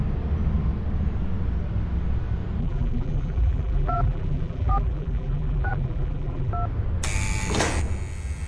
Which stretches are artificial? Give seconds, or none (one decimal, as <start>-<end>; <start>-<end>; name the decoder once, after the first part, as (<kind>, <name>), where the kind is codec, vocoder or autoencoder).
2.6-6.5 (vocoder, BigVGAN v2)